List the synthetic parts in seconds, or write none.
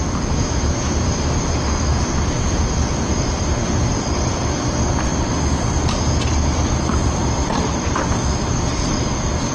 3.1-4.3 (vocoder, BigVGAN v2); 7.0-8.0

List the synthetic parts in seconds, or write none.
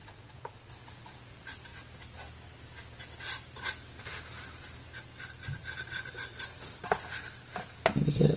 0.0-0.7 (vocoder, Vocos)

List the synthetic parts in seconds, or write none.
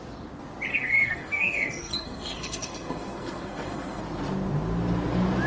0.7-4.0 (codec, SNAC)